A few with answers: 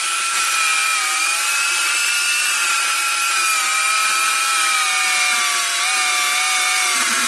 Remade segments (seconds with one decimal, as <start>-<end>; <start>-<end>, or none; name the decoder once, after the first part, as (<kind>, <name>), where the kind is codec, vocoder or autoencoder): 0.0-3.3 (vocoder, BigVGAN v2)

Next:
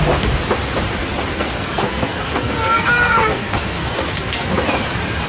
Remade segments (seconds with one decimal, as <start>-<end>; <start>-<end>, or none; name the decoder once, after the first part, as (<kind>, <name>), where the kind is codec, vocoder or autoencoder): 1.3-4.5 (codec, SNAC)

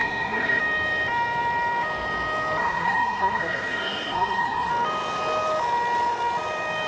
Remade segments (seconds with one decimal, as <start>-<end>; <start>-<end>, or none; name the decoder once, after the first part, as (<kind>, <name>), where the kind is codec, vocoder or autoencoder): 0.0-0.6 (codec, SNAC); 2.6-4.7